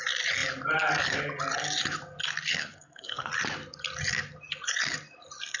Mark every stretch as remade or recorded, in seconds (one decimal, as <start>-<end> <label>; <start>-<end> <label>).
0.0-2.6 recorded; 2.6-3.3 remade; 3.3-5.6 recorded